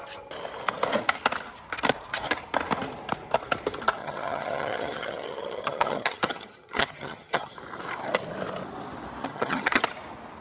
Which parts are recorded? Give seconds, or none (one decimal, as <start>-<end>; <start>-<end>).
0.0-4.0; 7.6-9.2; 9.8-10.4